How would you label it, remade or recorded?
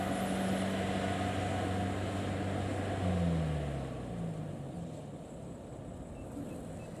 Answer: recorded